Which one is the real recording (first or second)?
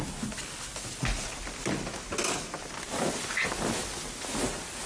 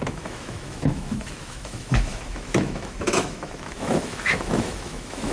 first